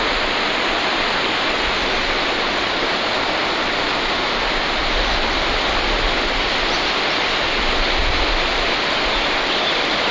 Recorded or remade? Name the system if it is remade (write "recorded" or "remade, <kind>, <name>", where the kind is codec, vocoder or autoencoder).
recorded